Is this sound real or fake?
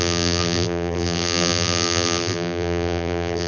fake